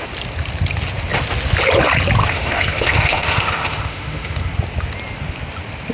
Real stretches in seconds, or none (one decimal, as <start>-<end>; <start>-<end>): 0.0-2.2; 4.5-5.9